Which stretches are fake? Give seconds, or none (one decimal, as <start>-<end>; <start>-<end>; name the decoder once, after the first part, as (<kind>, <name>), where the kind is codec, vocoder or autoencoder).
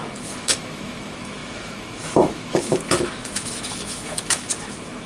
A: 0.0-5.1 (autoencoder, DAC-VAE)